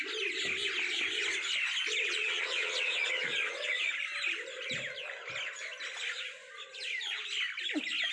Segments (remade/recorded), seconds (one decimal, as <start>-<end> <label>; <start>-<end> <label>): 0.0-2.1 recorded; 2.1-4.0 remade; 4.0-8.1 recorded